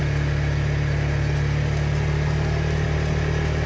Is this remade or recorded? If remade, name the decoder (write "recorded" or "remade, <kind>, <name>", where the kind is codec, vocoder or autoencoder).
recorded